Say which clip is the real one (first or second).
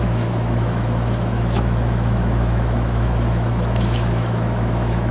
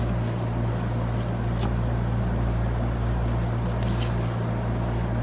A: second